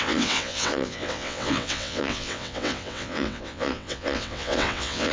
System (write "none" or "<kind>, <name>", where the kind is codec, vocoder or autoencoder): vocoder, WaveNeXt